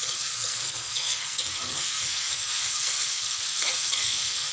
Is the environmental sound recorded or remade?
remade